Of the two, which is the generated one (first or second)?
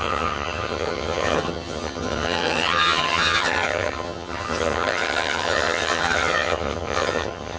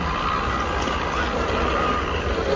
first